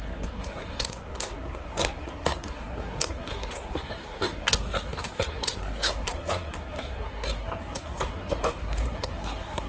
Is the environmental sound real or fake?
fake